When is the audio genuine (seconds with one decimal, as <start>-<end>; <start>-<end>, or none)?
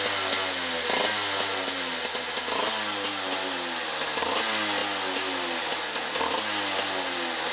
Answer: 0.0-7.5